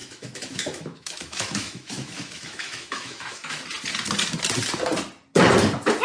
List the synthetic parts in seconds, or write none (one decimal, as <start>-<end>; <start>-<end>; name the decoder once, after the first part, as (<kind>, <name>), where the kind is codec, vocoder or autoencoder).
0.0-3.6 (autoencoder, DAC-VAE)